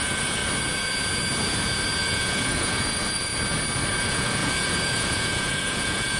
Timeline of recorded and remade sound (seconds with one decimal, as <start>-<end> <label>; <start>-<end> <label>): 0.0-0.4 remade; 0.4-2.0 recorded; 2.0-3.3 remade; 3.3-4.0 recorded; 4.0-6.2 remade

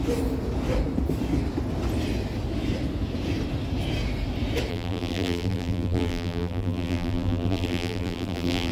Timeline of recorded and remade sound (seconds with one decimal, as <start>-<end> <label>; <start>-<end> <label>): 0.0-4.7 recorded; 4.7-8.7 remade

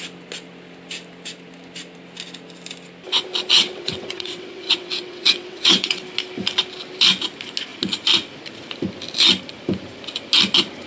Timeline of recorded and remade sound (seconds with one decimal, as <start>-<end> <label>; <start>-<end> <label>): 0.0-3.5 recorded; 3.5-6.0 remade; 6.0-10.9 recorded

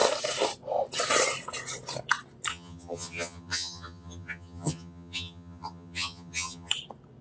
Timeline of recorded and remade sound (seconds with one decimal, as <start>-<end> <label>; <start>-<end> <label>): 0.0-2.5 recorded; 2.5-6.7 remade; 6.7-7.2 recorded

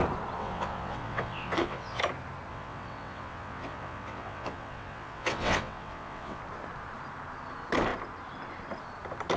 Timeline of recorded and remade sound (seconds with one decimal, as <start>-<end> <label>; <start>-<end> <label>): 0.0-0.4 recorded; 0.4-2.0 remade; 2.0-2.5 recorded; 2.5-6.4 remade; 6.4-9.4 recorded

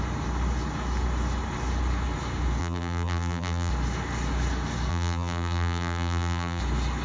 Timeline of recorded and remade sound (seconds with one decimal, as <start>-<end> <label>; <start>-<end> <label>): 0.0-2.6 recorded; 2.6-3.7 remade; 3.7-4.9 recorded; 4.9-6.6 remade; 6.6-7.0 recorded

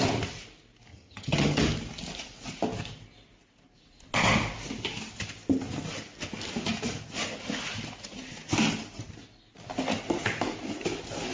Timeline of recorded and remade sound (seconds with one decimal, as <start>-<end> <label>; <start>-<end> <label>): 0.0-0.9 recorded; 0.9-1.6 remade; 1.6-11.3 recorded

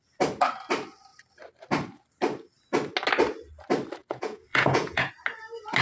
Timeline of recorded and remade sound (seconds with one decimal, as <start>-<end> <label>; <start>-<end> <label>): 0.0-4.0 recorded; 4.0-5.1 remade; 5.1-5.8 recorded